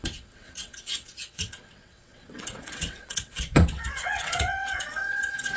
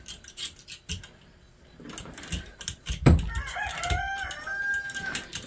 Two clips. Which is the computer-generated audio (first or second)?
first